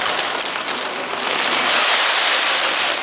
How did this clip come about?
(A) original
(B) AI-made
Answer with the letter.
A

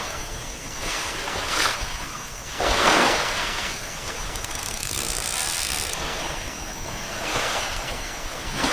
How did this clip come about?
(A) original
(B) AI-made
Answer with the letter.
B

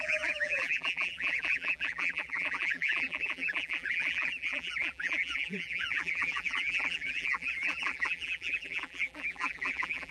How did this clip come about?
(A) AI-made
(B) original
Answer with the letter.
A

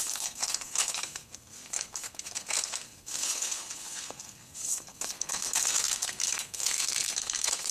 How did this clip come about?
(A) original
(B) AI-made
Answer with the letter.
B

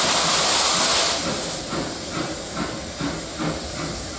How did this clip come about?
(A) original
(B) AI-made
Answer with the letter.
B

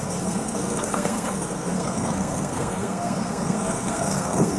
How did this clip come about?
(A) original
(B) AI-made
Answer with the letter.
B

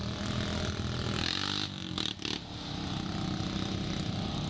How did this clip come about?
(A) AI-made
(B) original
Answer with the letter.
B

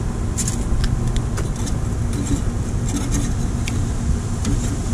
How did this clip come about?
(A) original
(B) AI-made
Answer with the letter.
A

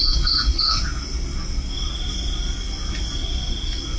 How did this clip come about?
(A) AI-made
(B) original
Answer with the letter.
B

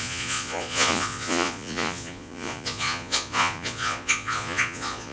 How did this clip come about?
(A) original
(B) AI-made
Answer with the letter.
B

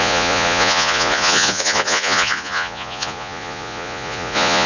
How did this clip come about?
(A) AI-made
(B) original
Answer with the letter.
A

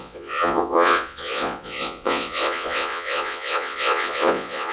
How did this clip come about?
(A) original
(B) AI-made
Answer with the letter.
B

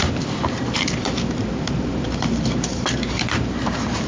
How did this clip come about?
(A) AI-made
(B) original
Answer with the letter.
A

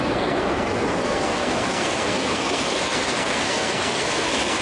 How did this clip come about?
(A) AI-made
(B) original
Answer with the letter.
A